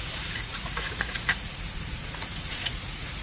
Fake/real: fake